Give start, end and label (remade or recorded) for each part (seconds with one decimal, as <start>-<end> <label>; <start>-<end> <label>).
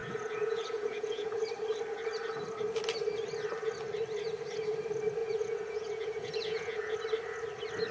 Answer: 0.0-1.3 remade; 1.3-5.2 recorded; 5.2-6.9 remade; 6.9-7.9 recorded